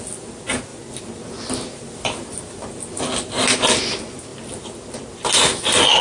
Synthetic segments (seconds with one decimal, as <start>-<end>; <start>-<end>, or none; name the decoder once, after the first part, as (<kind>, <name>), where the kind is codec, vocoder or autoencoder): none